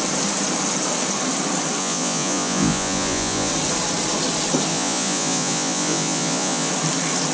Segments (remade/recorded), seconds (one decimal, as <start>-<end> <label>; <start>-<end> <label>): 0.0-1.8 recorded; 1.8-3.5 remade; 3.5-4.7 recorded; 4.7-6.7 remade; 6.7-7.3 recorded